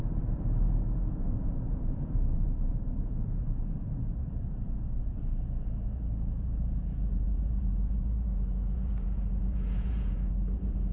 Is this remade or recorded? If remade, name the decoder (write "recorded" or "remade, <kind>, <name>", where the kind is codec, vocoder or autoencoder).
remade, vocoder, Vocos